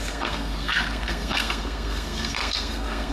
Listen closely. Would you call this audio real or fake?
fake